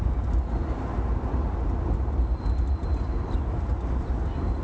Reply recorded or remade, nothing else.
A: recorded